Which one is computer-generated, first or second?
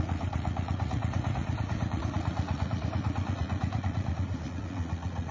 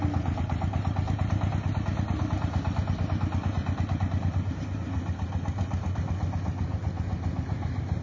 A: first